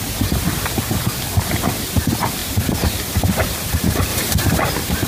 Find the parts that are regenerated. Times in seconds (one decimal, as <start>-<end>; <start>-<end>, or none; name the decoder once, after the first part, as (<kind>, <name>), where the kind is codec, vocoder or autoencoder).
2.4-3.2 (vocoder, BigVGAN v2); 4.1-4.6